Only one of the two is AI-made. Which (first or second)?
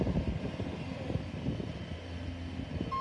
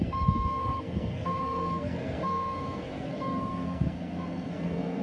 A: second